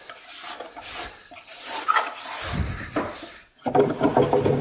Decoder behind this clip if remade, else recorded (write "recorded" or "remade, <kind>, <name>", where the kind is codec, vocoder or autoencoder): recorded